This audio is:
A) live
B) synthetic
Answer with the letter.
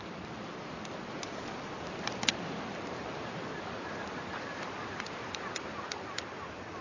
B